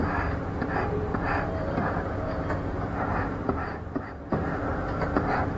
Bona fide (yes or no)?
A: no